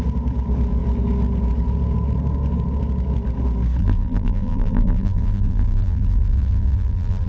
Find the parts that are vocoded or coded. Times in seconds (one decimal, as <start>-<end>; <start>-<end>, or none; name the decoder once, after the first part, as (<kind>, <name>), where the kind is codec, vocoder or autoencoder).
3.8-7.3 (vocoder, BigVGAN v2)